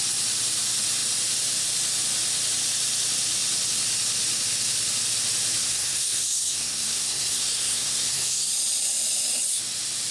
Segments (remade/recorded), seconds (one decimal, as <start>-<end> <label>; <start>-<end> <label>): 0.0-5.6 recorded; 5.6-8.5 remade; 8.5-10.1 recorded